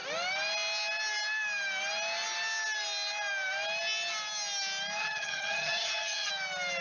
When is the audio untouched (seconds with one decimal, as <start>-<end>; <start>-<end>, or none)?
0.0-5.0; 6.3-6.8